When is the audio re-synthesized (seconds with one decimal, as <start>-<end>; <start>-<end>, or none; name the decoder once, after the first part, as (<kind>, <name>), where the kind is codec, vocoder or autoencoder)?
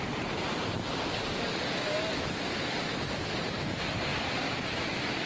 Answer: none